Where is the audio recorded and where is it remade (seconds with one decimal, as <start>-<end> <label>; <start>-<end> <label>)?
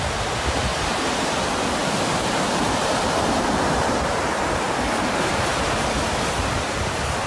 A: 0.0-0.7 recorded; 0.7-1.4 remade; 1.4-1.8 recorded; 1.8-5.5 remade; 5.5-7.3 recorded